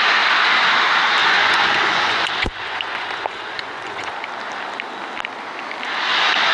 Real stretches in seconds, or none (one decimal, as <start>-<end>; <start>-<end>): 0.0-1.2; 4.1-6.5